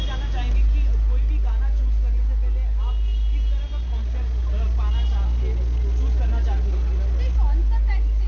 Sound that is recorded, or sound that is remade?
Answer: recorded